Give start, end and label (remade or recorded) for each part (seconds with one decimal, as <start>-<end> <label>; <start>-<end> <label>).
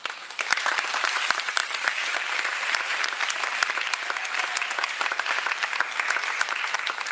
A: 0.0-4.4 remade; 4.4-6.5 recorded; 6.5-7.1 remade